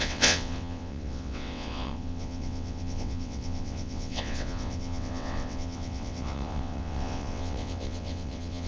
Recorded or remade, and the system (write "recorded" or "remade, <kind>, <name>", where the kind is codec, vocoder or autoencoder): remade, vocoder, WaveNeXt